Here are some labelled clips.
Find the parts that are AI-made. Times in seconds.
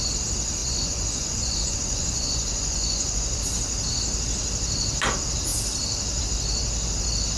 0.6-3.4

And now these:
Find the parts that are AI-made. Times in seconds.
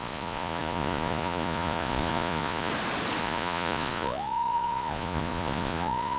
0.0-2.7; 3.2-6.2